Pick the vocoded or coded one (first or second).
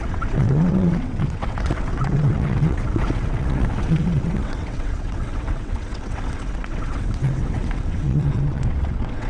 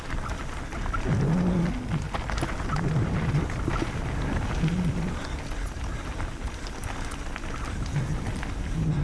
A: first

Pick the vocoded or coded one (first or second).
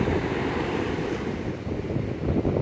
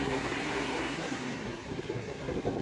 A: second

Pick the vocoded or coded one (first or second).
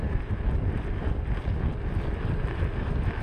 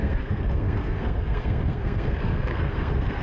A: second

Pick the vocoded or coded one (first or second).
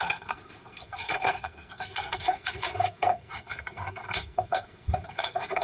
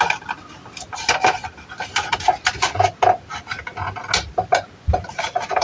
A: first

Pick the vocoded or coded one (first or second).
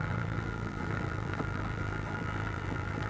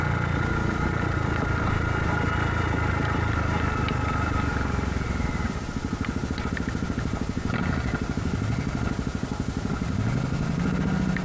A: first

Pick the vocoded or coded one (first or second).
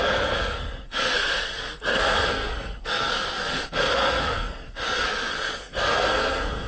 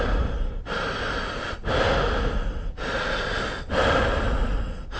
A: first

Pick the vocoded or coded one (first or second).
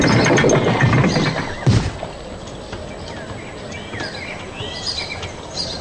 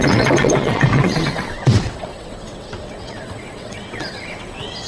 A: second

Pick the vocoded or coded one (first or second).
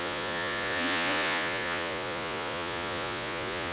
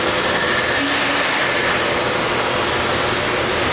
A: first